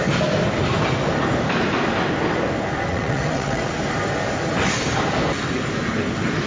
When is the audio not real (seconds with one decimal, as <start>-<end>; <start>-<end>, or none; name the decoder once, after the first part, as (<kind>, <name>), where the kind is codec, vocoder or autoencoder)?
2.9-3.7 (vocoder, WaveNeXt)